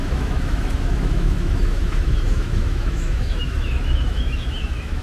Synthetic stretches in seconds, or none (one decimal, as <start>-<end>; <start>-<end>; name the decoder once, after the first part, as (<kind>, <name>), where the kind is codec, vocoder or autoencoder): 0.0-5.0 (autoencoder, DAC-VAE)